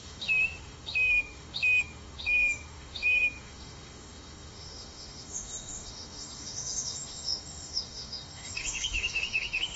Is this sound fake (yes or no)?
yes